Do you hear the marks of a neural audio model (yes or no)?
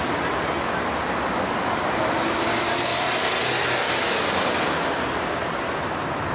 no